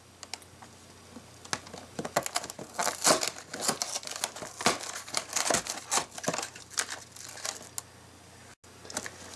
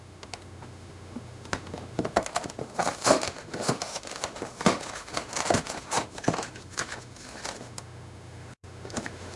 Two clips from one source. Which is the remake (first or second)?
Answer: second